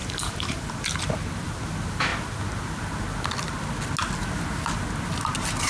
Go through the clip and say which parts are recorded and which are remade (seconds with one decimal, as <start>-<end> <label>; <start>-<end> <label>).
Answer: 0.0-0.7 remade; 0.7-5.7 recorded